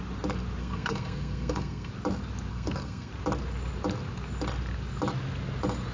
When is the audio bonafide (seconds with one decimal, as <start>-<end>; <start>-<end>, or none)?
0.0-0.6; 1.9-2.5; 3.1-5.9